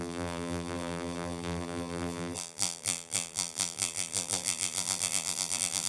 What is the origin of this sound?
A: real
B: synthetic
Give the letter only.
B